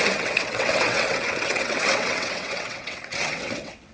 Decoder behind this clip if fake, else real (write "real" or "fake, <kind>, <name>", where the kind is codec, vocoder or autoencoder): fake, vocoder, WaveNeXt